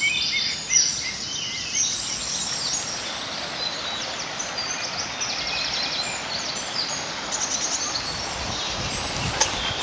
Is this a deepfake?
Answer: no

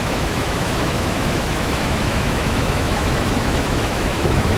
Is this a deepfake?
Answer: yes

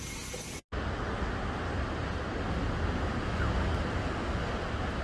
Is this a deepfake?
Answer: no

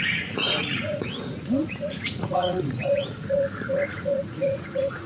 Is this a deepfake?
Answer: yes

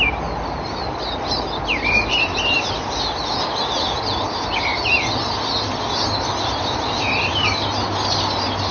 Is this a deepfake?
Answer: no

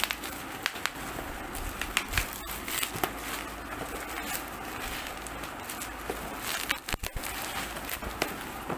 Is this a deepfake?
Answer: no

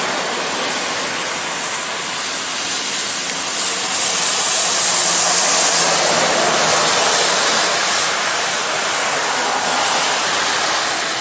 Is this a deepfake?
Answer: no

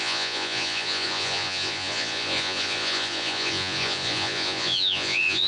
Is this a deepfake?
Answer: yes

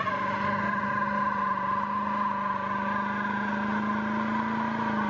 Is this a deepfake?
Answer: no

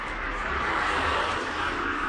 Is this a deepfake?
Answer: yes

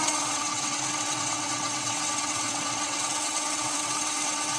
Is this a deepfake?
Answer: yes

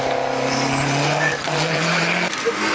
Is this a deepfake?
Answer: no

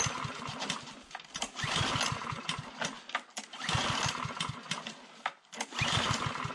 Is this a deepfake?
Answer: no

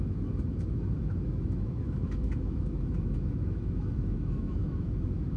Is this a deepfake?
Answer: yes